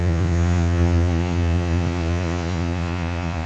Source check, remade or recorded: remade